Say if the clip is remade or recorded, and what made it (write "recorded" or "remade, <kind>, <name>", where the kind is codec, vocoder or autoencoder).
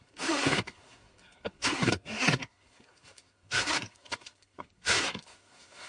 remade, codec, SNAC